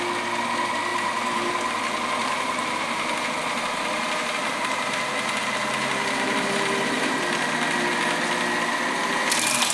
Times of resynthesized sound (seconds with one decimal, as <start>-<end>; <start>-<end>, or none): 0.9-1.5; 2.2-7.2

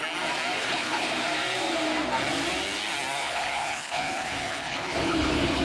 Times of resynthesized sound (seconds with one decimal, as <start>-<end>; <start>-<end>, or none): 0.6-1.1; 3.2-5.6

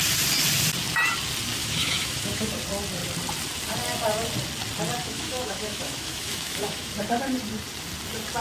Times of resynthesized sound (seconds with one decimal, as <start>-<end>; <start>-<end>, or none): 1.6-2.5; 5.0-6.9

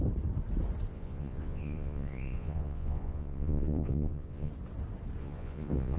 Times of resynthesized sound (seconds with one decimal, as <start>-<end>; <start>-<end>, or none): 0.9-4.5; 5.2-6.0

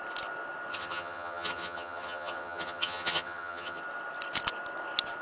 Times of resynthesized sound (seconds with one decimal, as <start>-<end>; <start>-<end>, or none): 0.7-3.8

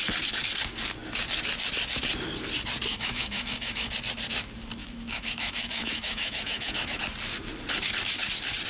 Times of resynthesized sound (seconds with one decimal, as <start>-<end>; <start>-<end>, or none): 2.9-3.9; 4.8-7.0

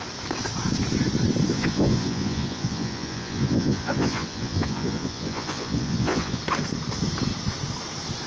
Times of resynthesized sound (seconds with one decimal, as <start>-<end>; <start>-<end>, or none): 1.5-6.4

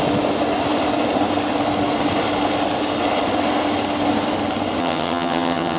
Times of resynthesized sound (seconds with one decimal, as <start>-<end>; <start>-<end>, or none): 4.8-5.8